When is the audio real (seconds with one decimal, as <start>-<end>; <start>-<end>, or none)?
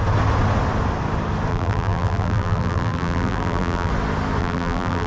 0.0-1.5; 3.9-4.4